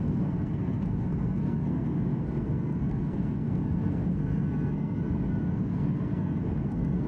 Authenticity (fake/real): fake